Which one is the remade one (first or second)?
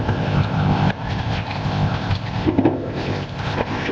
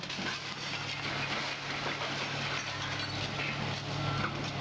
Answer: first